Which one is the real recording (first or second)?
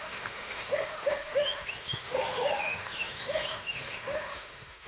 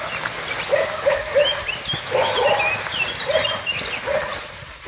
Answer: second